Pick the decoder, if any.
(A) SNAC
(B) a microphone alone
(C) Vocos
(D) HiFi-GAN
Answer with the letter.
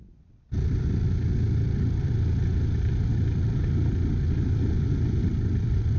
B